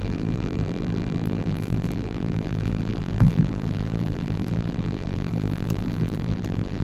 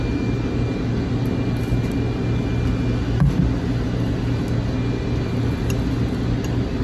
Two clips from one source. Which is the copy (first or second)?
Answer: first